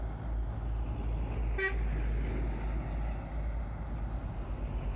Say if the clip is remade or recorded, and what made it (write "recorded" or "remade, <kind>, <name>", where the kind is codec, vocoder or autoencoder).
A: recorded